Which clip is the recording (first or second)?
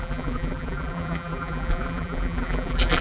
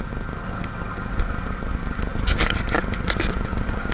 second